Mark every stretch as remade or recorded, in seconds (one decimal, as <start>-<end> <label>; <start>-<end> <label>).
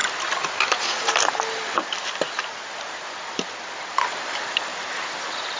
0.0-5.6 remade